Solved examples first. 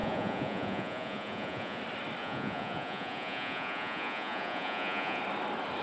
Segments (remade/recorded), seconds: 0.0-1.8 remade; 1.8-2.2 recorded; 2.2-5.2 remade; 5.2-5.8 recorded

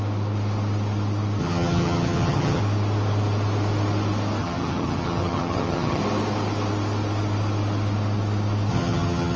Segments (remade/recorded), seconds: 0.0-1.4 recorded; 1.4-2.6 remade; 2.6-4.4 recorded; 4.4-6.0 remade; 6.0-8.7 recorded; 8.7-9.4 remade

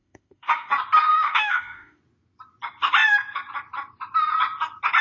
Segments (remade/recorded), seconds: 0.0-0.7 remade; 0.7-1.1 recorded; 1.1-2.0 remade; 2.0-5.0 recorded

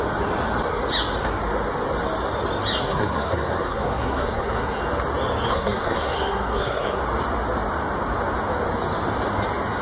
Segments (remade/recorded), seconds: 0.0-2.8 recorded; 2.8-4.8 remade; 4.8-5.5 recorded; 5.5-7.0 remade; 7.0-9.8 recorded